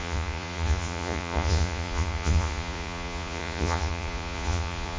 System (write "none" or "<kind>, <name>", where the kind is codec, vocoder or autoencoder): vocoder, Vocos